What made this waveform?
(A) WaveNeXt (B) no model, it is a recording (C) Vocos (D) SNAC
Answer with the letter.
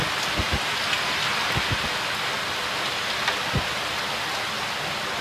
B